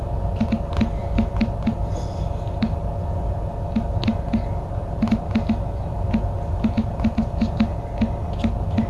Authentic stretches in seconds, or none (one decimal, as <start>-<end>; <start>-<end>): 0.0-8.9